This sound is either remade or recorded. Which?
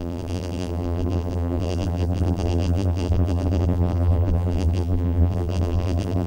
remade